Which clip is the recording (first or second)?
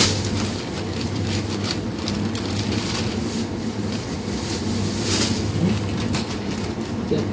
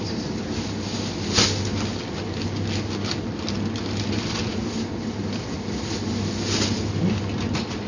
second